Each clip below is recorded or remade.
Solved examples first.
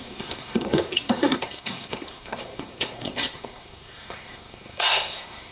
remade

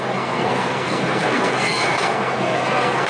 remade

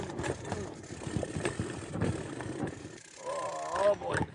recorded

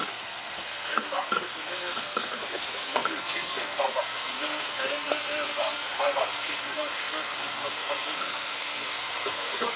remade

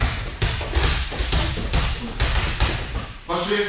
recorded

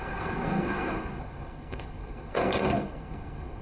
remade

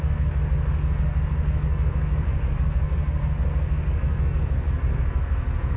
remade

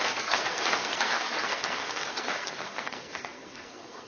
remade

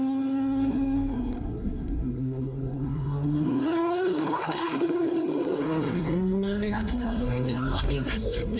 remade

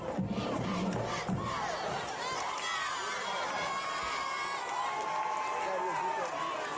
recorded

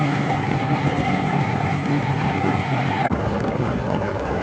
remade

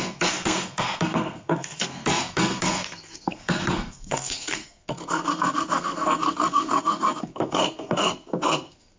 remade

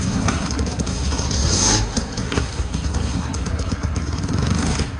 remade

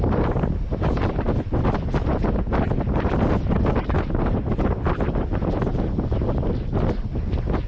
recorded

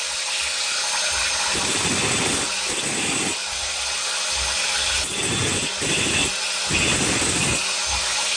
recorded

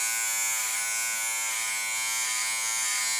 recorded